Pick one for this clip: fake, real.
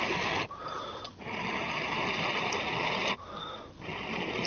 real